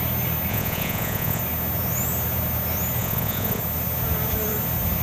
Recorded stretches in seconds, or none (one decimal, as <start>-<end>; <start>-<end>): 0.0-0.5; 1.4-3.0; 3.6-5.0

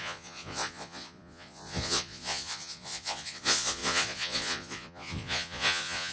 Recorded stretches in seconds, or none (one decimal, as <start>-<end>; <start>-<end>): none

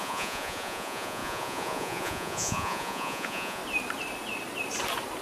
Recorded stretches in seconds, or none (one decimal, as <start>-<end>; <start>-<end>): 3.6-5.2

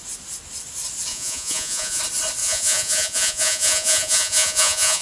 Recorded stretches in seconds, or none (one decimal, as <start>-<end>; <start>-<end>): 0.0-1.1; 2.0-2.4

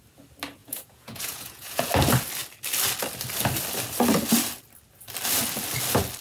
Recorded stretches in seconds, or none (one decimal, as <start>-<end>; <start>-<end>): 0.0-0.6; 1.9-6.2